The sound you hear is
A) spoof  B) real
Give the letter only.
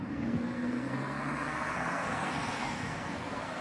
A